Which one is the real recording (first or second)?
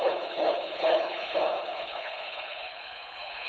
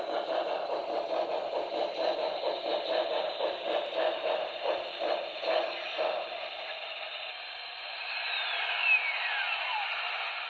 second